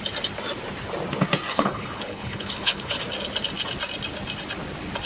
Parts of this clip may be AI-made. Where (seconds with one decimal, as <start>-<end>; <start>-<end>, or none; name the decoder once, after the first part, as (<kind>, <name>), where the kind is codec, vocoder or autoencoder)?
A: 1.5-3.0 (codec, HILCodec)